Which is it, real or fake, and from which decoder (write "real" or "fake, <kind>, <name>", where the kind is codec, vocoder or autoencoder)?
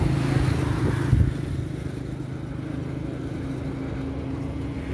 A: real